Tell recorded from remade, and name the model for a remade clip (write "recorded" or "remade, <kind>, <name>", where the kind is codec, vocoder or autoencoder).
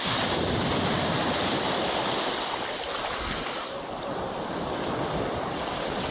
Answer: recorded